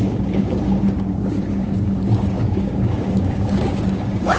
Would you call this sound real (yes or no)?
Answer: no